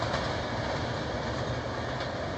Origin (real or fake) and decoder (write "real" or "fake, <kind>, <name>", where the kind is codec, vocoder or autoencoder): real